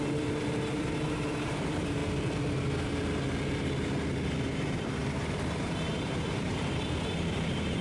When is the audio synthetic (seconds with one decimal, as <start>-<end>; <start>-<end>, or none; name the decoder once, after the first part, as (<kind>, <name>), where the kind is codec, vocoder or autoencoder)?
0.0-2.0 (vocoder, BigVGAN v2); 4.4-7.8